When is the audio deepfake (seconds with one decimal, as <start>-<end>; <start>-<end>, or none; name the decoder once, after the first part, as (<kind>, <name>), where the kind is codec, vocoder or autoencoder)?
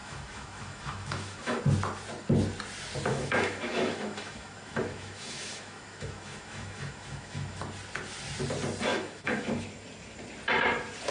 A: 0.0-1.6 (autoencoder, DAC-VAE); 3.1-7.6; 8.9-9.7